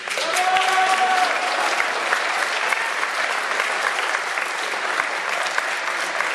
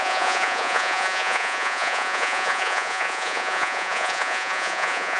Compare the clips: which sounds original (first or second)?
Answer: first